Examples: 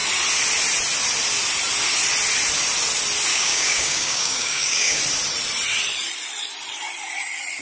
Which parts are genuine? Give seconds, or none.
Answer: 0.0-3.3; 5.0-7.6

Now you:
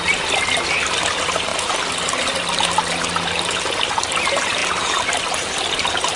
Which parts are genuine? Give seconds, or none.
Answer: 0.0-6.2

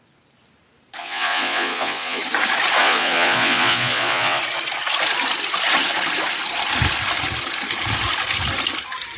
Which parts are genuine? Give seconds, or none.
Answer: 0.0-1.0; 2.2-2.8; 4.4-9.2

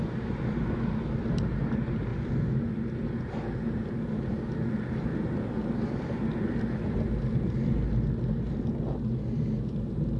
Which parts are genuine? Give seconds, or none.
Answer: 0.0-10.2